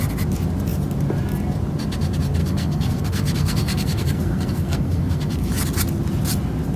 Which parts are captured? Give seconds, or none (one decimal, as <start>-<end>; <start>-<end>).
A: 0.0-2.4; 5.5-6.8